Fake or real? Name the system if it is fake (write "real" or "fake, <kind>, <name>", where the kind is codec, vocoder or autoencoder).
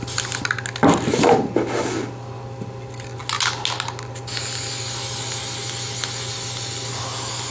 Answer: real